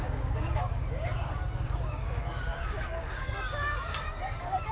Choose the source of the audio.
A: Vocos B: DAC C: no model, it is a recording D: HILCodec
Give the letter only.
B